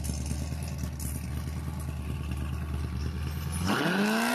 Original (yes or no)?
yes